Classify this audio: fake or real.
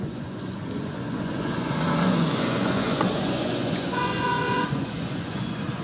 fake